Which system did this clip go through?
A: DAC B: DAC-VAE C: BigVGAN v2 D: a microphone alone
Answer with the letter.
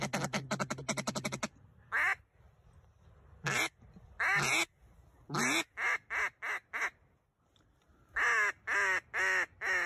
D